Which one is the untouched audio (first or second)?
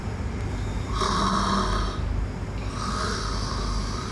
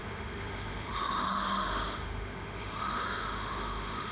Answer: first